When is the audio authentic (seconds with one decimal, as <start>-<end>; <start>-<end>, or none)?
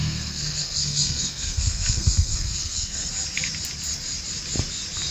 3.1-5.1